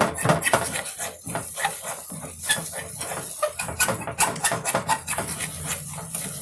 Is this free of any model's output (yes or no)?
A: yes